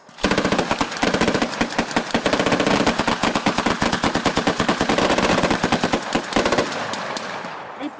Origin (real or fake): real